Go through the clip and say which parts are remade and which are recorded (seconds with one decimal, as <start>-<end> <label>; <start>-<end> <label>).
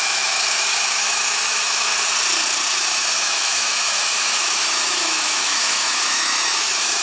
0.0-1.9 remade; 1.9-2.7 recorded; 2.7-7.0 remade